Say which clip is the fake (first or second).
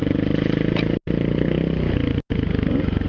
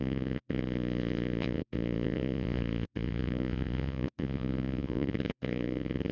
second